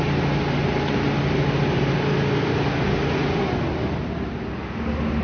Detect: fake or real real